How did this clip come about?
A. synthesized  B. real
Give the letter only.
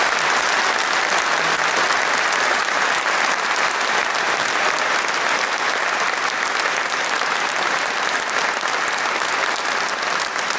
B